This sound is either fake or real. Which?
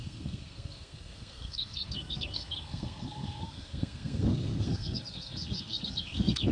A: fake